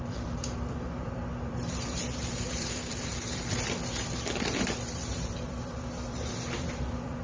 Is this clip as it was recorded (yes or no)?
no